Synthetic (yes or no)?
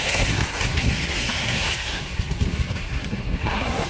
yes